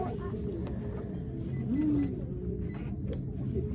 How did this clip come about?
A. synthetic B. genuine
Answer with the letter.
B